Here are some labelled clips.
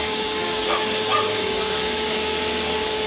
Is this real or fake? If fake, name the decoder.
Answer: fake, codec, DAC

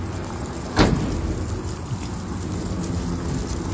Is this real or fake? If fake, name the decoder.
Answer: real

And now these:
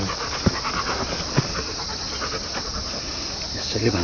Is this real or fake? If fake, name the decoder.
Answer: real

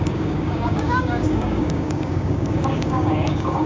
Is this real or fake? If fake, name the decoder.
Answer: fake, codec, DAC